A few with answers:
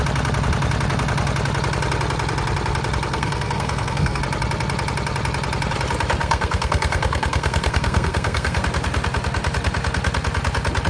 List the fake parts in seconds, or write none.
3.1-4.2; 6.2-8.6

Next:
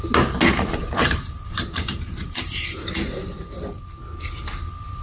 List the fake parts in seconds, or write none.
0.8-3.8

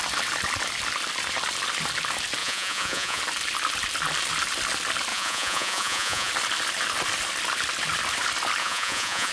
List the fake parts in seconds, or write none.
2.4-3.2; 5.1-6.3; 8.6-9.3

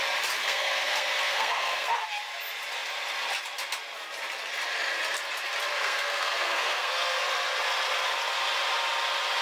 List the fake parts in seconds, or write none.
0.4-1.9; 5.7-7.2